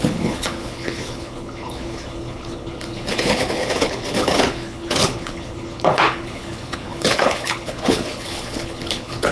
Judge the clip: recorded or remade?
remade